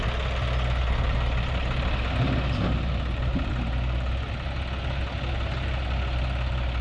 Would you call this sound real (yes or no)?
yes